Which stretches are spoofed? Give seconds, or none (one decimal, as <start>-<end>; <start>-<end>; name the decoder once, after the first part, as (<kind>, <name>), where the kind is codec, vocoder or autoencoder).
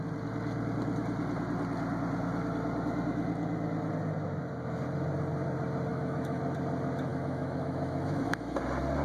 5.9-6.4 (autoencoder, DAC-VAE); 7.1-8.6